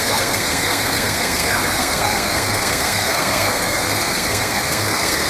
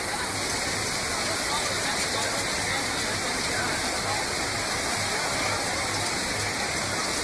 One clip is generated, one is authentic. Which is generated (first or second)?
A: first